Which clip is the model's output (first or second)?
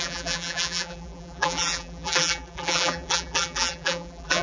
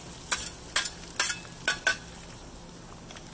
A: first